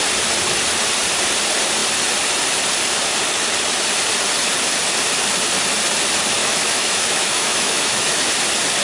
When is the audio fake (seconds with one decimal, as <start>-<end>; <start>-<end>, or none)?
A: 6.4-8.3

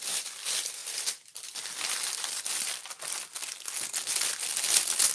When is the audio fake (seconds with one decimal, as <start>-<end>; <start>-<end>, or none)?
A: none

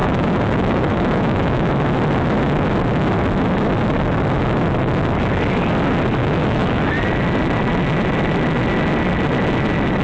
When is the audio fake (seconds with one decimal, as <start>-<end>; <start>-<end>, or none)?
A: 0.0-1.7; 6.2-6.9

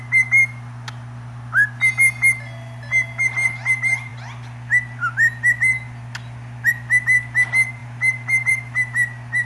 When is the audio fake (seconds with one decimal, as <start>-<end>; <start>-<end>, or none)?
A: none

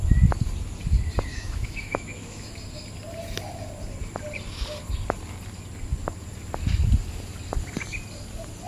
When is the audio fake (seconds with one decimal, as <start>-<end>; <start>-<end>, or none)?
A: 1.3-2.5